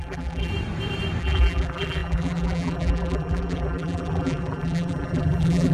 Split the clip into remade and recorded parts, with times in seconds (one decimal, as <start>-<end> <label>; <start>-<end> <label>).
0.0-0.5 remade; 0.5-1.2 recorded; 1.2-5.7 remade